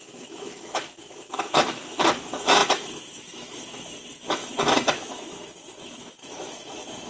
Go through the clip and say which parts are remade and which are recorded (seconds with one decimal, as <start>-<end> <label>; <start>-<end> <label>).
0.0-7.1 remade